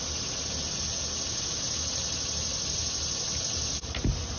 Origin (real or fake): real